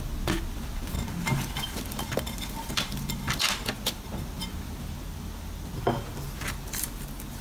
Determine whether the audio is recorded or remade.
recorded